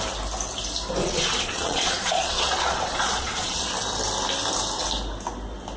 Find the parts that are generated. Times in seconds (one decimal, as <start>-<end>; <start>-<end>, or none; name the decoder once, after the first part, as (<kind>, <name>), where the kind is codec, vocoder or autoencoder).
1.0-3.7 (vocoder, Vocos)